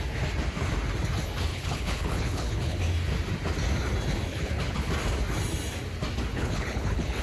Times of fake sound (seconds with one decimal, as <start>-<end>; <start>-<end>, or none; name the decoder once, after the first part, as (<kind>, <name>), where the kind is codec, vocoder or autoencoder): 1.5-2.8 (codec, HILCodec); 4.3-4.9; 6.3-7.2